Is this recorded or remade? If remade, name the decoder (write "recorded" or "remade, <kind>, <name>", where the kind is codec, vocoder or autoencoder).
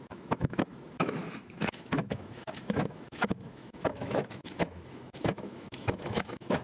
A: remade, autoencoder, DAC-VAE